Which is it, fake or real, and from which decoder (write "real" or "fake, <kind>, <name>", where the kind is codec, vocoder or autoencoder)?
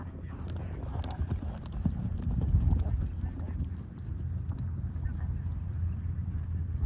real